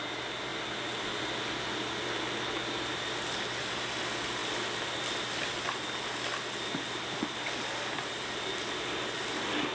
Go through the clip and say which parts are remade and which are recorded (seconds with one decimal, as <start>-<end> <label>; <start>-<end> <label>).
0.0-9.7 recorded